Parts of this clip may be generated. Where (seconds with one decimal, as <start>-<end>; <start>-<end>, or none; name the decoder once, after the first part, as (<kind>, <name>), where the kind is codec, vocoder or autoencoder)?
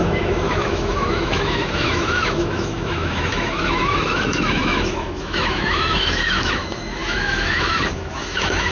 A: 0.0-8.7 (autoencoder, DAC-VAE)